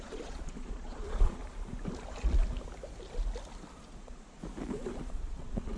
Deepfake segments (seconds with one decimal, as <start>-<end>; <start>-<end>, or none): 0.0-1.4; 3.9-4.4; 5.1-5.8